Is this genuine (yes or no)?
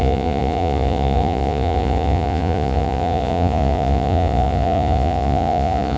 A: no